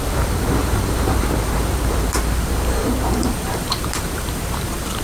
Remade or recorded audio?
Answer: remade